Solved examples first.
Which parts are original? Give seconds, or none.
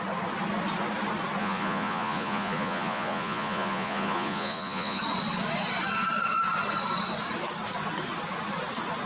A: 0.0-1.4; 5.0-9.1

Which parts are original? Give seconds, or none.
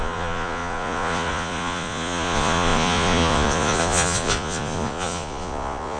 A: none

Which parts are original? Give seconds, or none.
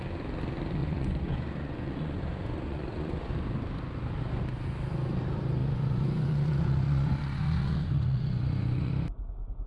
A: 0.0-0.8; 3.3-5.6; 8.9-9.7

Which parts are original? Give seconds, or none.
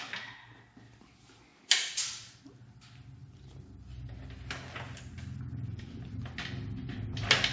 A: 0.0-1.5; 2.4-3.2; 3.8-7.5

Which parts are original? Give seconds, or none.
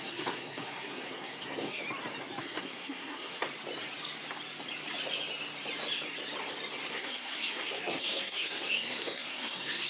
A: 1.8-2.4; 3.4-6.9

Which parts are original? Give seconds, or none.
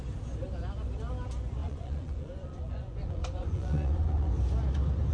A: 0.0-1.6; 4.3-5.1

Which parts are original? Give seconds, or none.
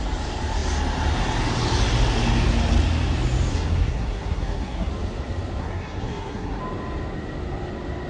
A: 0.0-3.5; 4.9-5.6; 6.6-8.1